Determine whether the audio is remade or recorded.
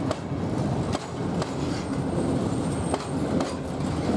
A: recorded